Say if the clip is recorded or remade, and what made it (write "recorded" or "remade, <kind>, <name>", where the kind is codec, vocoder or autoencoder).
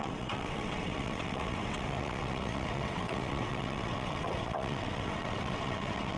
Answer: remade, vocoder, WaveNeXt